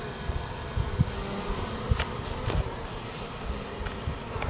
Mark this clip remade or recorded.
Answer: recorded